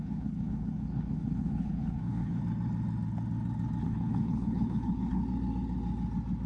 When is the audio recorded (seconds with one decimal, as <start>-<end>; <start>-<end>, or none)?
2.4-3.8; 5.2-6.5